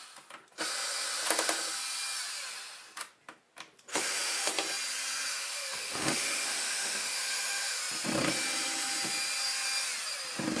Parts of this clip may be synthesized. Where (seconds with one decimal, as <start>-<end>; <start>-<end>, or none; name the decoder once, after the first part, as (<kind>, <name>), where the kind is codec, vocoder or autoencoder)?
3.9-4.5 (autoencoder, DAC-VAE); 5.3-7.8